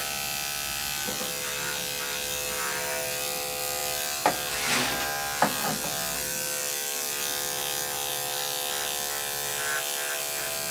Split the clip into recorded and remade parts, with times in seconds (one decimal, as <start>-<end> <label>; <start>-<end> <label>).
0.0-3.8 recorded; 3.8-4.5 remade; 4.5-10.7 recorded